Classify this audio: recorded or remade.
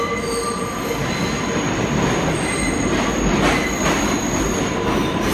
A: recorded